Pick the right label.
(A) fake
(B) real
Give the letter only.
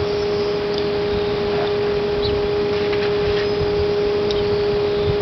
B